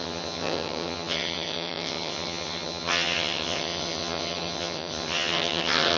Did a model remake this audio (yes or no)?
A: yes